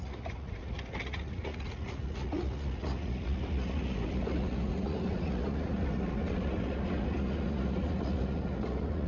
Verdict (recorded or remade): remade